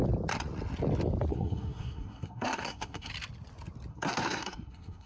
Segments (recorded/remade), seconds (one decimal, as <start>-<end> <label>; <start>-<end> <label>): 0.0-1.3 recorded; 1.3-3.1 remade; 3.1-3.9 recorded; 3.9-5.1 remade